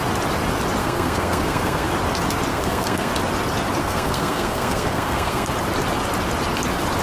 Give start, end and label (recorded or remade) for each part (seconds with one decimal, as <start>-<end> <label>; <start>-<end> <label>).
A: 0.0-0.8 recorded; 0.8-1.9 remade; 1.9-2.5 recorded; 2.5-3.1 remade; 3.1-3.8 recorded; 3.8-5.5 remade; 5.5-7.0 recorded